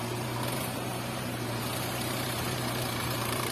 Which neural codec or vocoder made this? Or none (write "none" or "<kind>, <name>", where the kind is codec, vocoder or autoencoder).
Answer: vocoder, BigVGAN v2